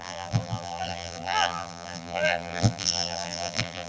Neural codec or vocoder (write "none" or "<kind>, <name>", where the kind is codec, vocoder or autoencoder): vocoder, BigVGAN v2